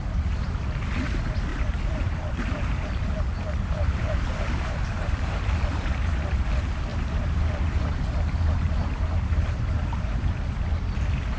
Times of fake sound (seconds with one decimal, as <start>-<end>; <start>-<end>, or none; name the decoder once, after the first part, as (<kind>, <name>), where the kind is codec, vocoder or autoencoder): 1.5-5.9 (vocoder, BigVGAN v2); 6.9-10.3